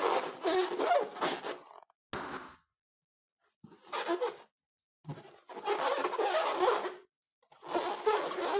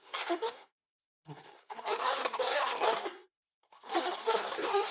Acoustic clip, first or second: first